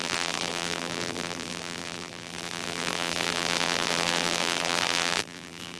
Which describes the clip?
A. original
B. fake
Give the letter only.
B